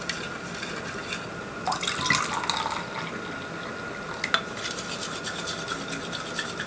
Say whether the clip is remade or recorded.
recorded